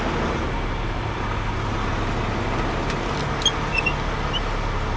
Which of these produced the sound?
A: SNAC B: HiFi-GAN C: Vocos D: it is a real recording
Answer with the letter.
D